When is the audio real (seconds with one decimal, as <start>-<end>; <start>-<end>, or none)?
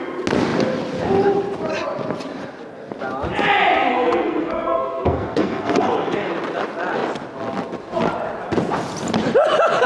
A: 0.0-3.9; 6.3-9.9